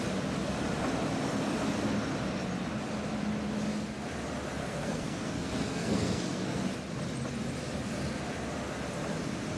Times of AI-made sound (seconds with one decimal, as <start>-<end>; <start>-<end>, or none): 4.6-6.6